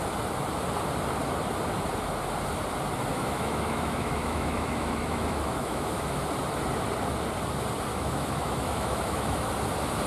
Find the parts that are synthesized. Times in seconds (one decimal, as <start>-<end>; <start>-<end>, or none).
3.1-6.2; 7.9-9.5